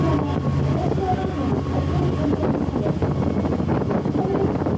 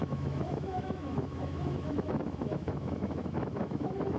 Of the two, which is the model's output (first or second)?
second